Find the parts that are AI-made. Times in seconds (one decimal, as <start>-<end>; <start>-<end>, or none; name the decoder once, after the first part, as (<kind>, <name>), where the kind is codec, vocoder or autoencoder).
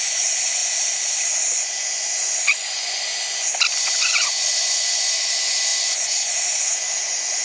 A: 0.0-0.6 (vocoder, Vocos); 1.7-3.1; 3.8-7.4